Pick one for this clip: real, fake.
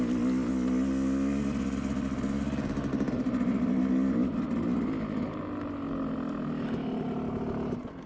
real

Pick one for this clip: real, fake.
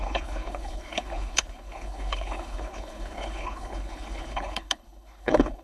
fake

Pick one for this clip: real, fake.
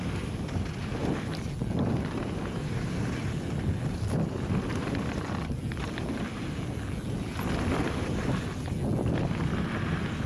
real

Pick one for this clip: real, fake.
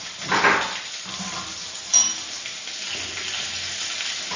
real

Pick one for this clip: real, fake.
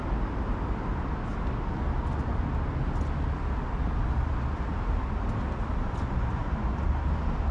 real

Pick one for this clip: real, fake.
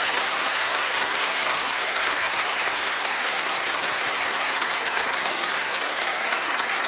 fake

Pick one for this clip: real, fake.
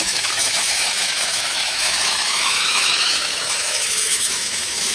fake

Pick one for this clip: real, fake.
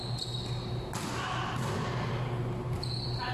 real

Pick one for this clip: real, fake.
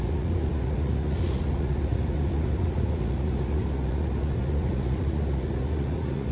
fake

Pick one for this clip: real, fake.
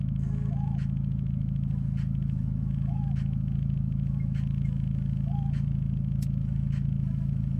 fake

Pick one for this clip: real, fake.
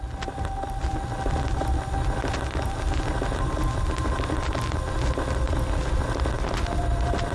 real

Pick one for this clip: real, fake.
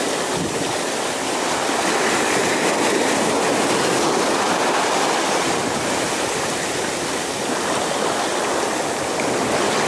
real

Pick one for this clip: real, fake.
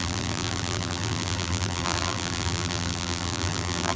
fake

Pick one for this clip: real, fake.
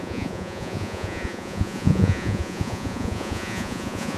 fake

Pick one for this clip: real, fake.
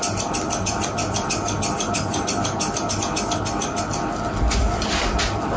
real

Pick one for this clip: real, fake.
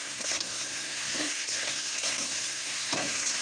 fake